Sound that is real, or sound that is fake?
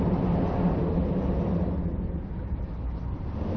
real